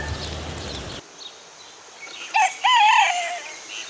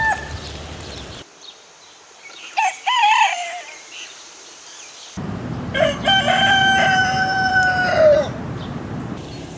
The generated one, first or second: second